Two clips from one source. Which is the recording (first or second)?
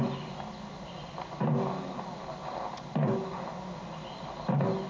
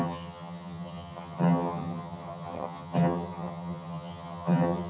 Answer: first